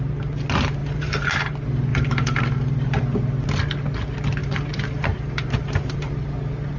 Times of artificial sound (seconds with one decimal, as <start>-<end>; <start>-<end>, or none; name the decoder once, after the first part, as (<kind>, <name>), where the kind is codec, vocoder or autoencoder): 0.8-1.5 (vocoder, BigVGAN v2); 1.9-3.0; 4.4-6.1